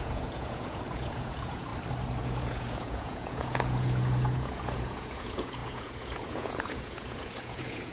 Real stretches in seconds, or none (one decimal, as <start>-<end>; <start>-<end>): 1.7-2.2